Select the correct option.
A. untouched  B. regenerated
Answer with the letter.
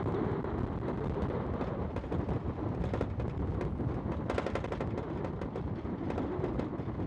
A